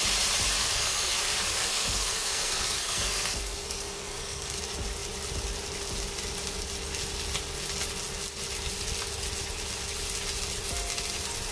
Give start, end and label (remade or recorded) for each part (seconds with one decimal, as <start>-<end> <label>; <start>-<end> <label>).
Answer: 0.0-0.6 recorded; 0.6-4.6 remade; 4.6-11.5 recorded